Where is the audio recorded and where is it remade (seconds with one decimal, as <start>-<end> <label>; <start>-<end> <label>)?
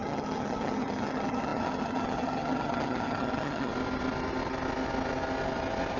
0.0-3.7 remade; 3.7-6.0 recorded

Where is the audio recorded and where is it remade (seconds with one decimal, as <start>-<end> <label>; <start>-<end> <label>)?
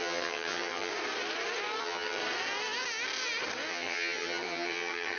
0.0-0.9 remade; 0.9-1.8 recorded; 1.8-2.2 remade; 2.2-3.7 recorded; 3.7-5.2 remade